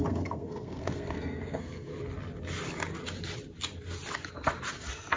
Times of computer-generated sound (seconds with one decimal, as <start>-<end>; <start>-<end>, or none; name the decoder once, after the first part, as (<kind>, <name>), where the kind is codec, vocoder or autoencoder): 0.0-1.9 (codec, SNAC)